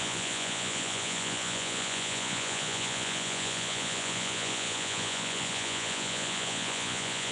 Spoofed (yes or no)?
yes